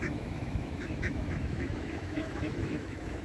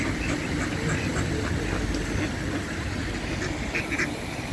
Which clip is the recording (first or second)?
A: second